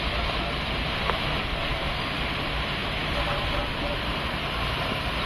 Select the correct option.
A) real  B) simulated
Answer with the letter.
A